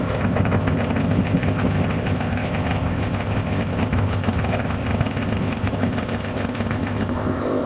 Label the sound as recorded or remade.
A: remade